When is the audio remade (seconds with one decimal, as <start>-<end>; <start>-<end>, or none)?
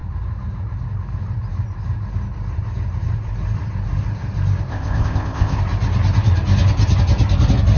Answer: 4.7-5.6